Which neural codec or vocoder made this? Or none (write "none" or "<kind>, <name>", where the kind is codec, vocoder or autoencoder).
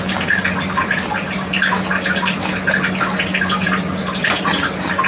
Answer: none